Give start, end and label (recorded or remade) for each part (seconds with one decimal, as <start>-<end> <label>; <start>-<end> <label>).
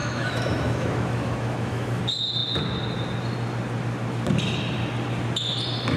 0.0-2.0 remade; 2.0-6.0 recorded